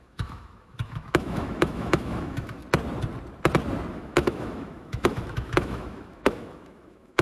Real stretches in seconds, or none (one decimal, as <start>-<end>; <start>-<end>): 2.6-3.9